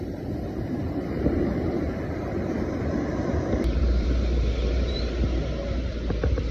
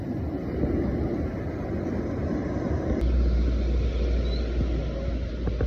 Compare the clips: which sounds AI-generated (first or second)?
first